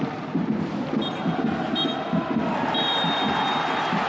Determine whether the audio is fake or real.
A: real